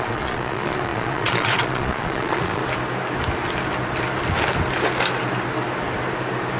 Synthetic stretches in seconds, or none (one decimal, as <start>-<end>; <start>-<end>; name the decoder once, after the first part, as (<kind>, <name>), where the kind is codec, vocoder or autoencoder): 0.0-2.6 (vocoder, Vocos)